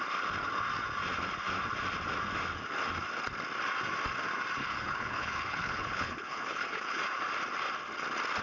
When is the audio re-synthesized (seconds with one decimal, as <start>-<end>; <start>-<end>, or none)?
4.6-7.0